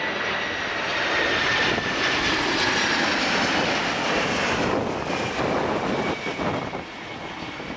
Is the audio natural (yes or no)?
yes